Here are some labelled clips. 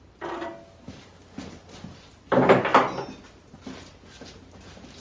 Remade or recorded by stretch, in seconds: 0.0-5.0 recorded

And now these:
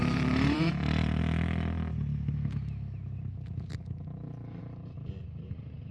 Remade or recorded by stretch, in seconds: 0.0-1.2 remade; 1.2-4.6 recorded; 4.6-5.9 remade

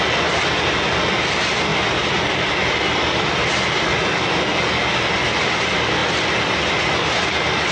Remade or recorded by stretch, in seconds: 0.0-1.7 recorded; 1.7-3.5 remade; 3.5-6.0 recorded; 6.0-6.8 remade; 6.8-7.7 recorded